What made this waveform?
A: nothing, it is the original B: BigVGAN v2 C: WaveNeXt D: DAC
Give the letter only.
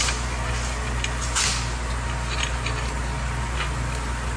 A